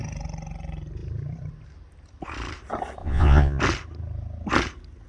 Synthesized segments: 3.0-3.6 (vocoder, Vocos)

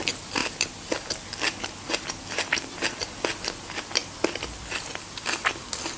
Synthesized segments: none

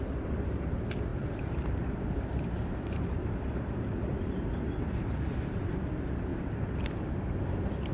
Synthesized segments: 1.1-5.8 (vocoder, BigVGAN v2)

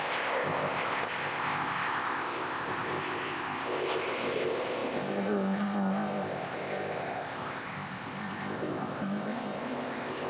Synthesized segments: 0.0-10.3 (codec, ZipCodec)

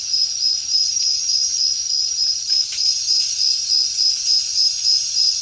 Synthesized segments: 0.0-1.8 (vocoder, BigVGAN v2); 5.0-5.4

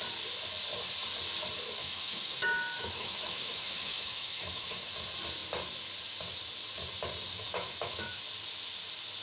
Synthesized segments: 1.8-4.9 (autoencoder, DAC-VAE); 7.3-8.2

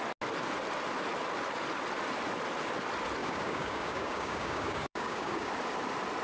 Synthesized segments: 3.2-5.5 (codec, DAC)

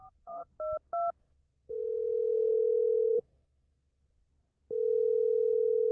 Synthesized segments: 0.0-0.5 (codec, SNAC); 1.2-4.3